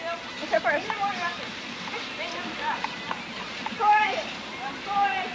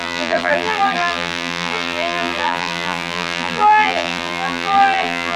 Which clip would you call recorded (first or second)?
first